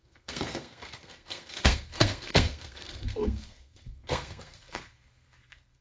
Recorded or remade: remade